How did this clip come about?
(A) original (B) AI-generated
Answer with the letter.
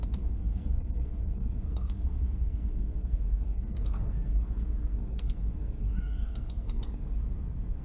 B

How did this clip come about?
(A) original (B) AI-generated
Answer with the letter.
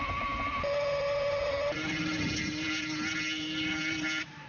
B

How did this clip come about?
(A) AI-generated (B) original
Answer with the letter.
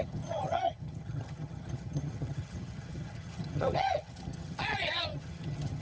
A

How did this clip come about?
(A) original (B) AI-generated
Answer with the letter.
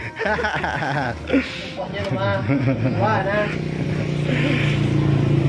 A